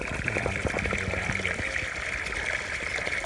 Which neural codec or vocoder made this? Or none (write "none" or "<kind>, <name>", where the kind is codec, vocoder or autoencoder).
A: vocoder, BigVGAN v2